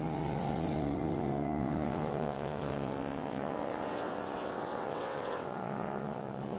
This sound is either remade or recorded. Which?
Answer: remade